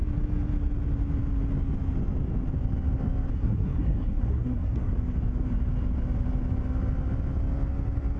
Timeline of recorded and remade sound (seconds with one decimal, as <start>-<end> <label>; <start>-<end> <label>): 0.0-3.3 recorded; 3.3-4.9 remade; 4.9-8.2 recorded